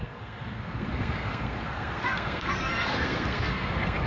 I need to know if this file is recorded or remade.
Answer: remade